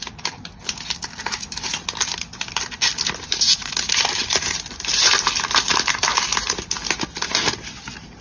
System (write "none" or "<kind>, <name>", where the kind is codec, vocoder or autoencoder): none